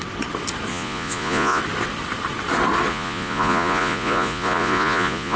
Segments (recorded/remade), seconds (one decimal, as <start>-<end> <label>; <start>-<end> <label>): 0.0-0.7 recorded; 0.7-1.6 remade; 1.6-2.9 recorded; 2.9-5.4 remade